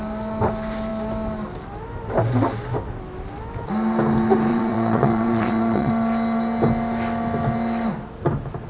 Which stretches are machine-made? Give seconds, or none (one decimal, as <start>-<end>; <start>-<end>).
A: 4.5-5.9